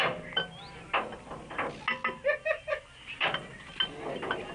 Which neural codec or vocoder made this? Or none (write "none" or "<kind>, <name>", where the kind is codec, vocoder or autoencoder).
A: none